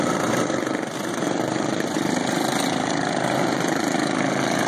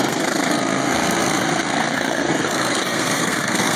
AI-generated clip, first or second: second